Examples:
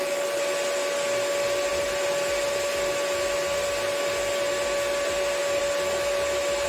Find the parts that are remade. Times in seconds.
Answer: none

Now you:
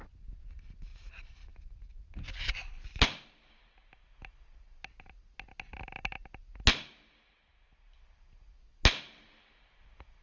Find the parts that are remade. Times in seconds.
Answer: none

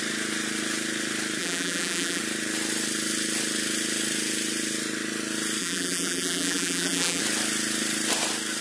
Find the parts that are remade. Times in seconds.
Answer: 1.4-2.2; 5.6-7.2

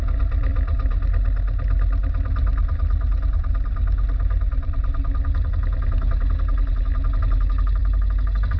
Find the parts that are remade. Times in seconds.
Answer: none

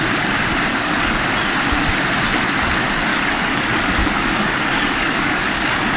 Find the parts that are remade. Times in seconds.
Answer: 0.7-1.2; 3.1-6.0